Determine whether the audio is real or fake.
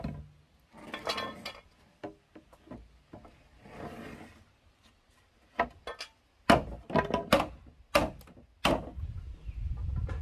real